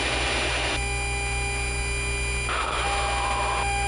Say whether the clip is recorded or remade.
recorded